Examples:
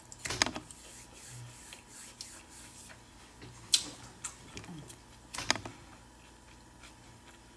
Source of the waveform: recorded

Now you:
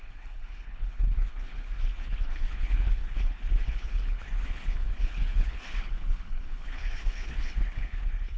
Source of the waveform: remade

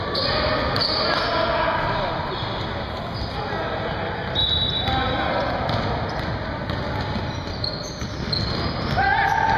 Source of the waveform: recorded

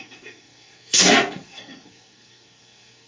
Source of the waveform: remade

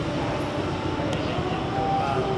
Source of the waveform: recorded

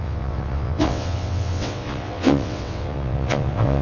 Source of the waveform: remade